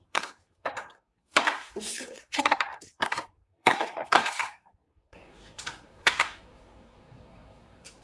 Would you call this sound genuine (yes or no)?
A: no